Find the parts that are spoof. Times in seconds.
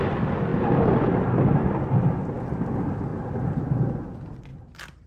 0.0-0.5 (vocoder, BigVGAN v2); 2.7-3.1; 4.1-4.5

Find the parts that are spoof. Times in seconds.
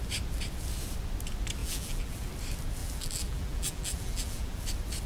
1.6-2.3 (vocoder, BigVGAN v2); 2.8-4.6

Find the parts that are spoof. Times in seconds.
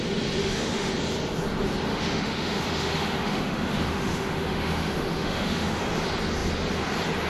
0.4-0.9 (autoencoder, DAC-VAE); 1.9-5.8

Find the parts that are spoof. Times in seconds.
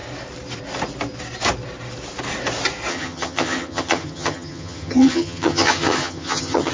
2.9-6.7 (vocoder, HiFi-GAN)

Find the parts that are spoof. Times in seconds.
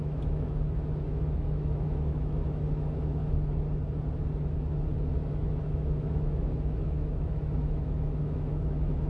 0.0-3.2 (autoencoder, DAC-VAE); 5.1-9.1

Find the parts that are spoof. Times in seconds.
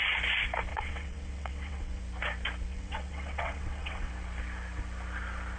0.7-2.0 (vocoder, WaveNeXt); 2.7-4.1